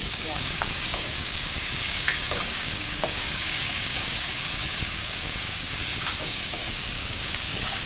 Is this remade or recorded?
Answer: remade